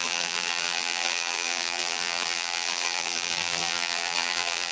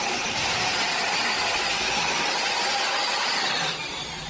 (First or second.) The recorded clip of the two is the second